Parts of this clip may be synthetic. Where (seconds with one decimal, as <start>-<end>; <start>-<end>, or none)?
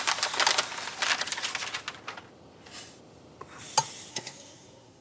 4.1-5.0